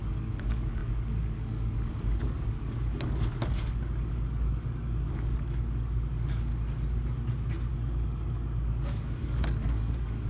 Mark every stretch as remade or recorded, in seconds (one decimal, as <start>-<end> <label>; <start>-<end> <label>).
0.0-6.5 remade; 6.5-7.7 recorded; 7.7-10.3 remade